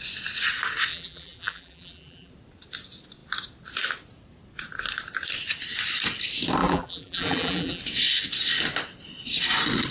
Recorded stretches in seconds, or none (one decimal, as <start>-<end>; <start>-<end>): 0.0-0.9; 2.3-6.6; 7.8-9.9